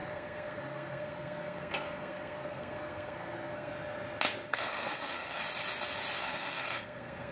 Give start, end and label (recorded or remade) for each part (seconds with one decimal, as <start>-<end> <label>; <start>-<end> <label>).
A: 0.0-3.7 remade; 3.7-4.5 recorded; 4.5-5.4 remade; 5.4-6.2 recorded; 6.2-7.3 remade